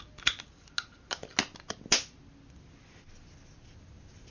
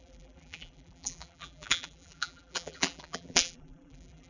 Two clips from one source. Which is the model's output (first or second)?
second